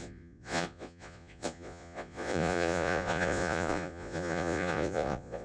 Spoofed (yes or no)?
yes